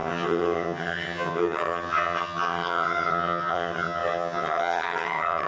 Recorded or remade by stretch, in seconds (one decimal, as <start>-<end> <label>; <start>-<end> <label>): 0.0-5.5 remade